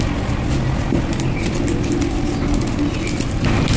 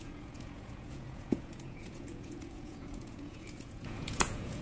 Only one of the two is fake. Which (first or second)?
second